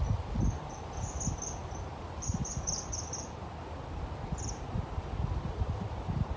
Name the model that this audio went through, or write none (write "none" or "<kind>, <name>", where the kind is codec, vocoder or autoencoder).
none